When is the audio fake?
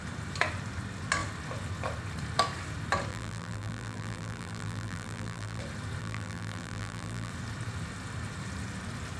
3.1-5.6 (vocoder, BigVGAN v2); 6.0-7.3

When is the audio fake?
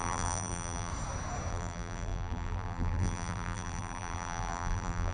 0.0-0.9 (vocoder, BigVGAN v2); 1.5-5.1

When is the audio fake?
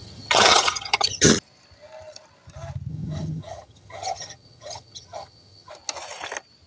0.0-1.3 (vocoder, HiFi-GAN); 2.9-5.7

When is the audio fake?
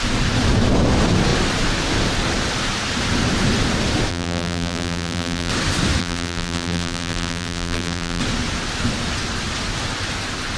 4.1-5.5 (vocoder, BigVGAN v2); 6.0-8.2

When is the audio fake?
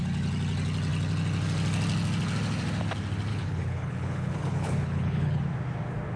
3.3-5.4 (codec, HILCodec)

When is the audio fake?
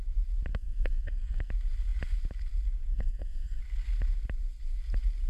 0.5-1.5 (codec, SNAC); 2.9-3.6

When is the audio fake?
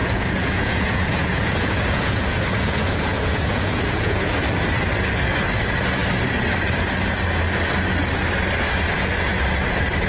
0.0-4.3 (vocoder, Vocos)